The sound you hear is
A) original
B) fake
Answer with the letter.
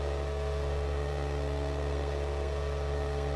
B